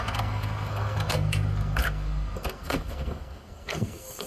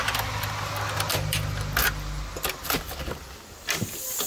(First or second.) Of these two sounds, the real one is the second